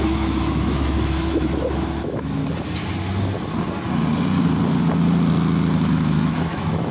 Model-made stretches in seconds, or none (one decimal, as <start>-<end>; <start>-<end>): 0.0-2.4; 5.9-6.9